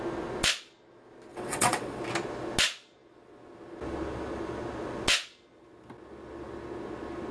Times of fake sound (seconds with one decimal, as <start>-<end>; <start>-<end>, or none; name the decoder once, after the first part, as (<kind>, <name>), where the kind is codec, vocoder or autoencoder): 1.3-2.0 (vocoder, WaveNeXt)